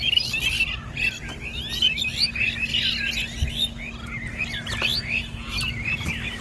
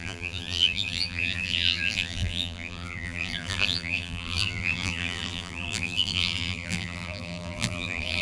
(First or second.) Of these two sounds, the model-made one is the second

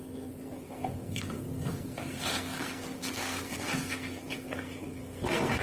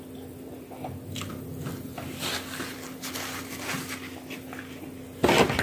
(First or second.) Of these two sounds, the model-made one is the first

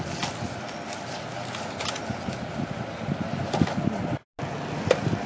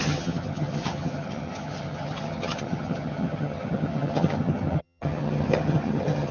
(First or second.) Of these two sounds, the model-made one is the second